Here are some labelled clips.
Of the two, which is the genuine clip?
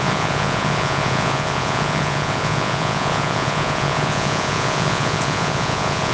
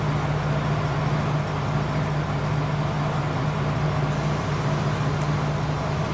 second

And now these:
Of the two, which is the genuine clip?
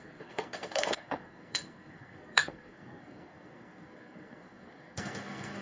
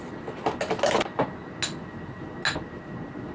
second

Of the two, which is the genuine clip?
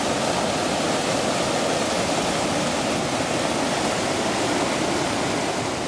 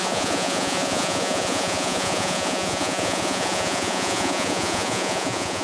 first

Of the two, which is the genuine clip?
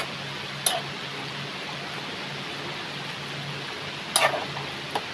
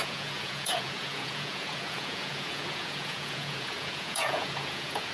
first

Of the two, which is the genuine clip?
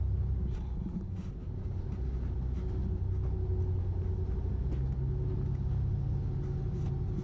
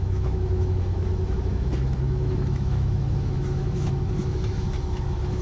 first